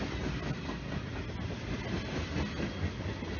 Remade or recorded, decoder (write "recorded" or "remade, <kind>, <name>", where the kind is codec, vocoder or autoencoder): recorded